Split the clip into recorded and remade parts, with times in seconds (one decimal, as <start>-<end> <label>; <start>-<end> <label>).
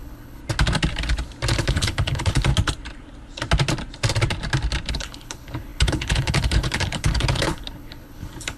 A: 0.0-0.4 remade; 0.4-1.5 recorded; 1.5-2.5 remade; 2.5-4.9 recorded; 4.9-8.6 remade